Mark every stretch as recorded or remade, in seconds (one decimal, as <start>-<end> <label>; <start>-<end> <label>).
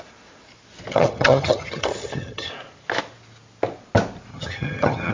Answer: 0.0-0.9 recorded; 0.9-2.5 remade; 2.5-4.3 recorded; 4.3-5.1 remade